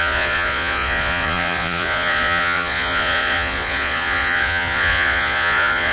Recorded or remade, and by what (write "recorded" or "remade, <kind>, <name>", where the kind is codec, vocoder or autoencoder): remade, vocoder, Vocos